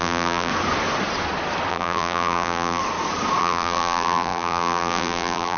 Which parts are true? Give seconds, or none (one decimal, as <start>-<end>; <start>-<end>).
0.5-1.7; 2.8-3.4